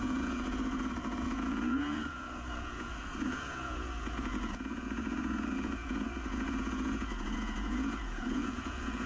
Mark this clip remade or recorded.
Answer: remade